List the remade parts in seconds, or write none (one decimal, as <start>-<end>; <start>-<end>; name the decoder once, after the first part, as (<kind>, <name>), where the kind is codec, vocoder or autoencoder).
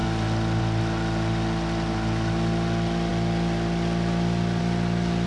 none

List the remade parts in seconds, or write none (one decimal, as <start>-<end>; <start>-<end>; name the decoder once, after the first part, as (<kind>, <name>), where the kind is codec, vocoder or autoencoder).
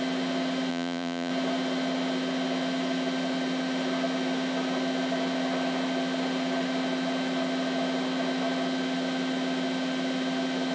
0.7-1.3 (vocoder, Vocos)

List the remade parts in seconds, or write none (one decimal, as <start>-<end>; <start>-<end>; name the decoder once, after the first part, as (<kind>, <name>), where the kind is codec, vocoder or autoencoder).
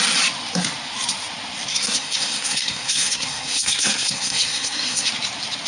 1.7-5.1 (codec, SNAC)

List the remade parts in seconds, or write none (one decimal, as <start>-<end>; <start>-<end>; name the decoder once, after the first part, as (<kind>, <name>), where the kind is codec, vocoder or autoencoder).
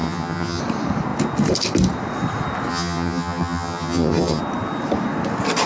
0.0-0.6 (vocoder, HiFi-GAN); 2.7-4.4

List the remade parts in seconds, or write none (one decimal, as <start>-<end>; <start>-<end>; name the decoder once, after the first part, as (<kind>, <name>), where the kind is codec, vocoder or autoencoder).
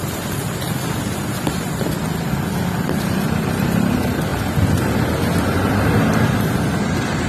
none